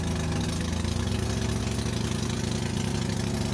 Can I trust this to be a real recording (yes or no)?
yes